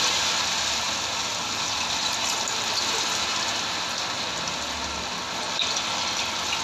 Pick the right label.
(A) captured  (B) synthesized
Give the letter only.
A